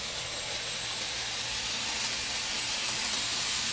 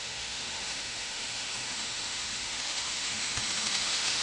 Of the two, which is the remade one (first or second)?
second